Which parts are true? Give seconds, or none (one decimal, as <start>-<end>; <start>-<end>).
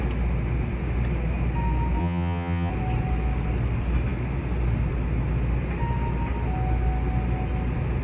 0.0-2.0; 2.7-8.0